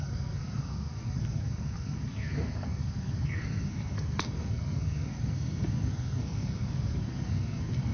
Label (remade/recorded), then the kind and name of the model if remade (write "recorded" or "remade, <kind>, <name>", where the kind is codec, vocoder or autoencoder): remade, codec, SNAC